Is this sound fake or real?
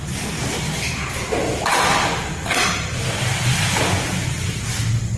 real